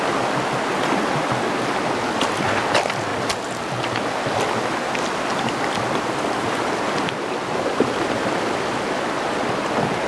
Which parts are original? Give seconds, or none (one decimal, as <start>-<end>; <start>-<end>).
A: 0.0-10.1